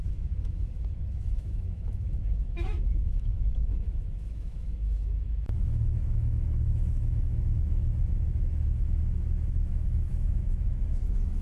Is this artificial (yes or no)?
yes